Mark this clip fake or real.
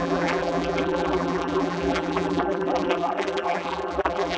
fake